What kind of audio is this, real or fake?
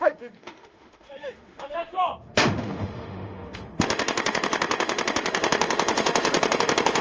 fake